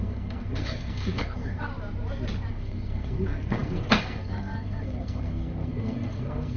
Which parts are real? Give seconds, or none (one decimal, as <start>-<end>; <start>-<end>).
1.7-2.5